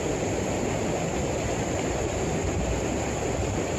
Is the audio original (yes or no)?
yes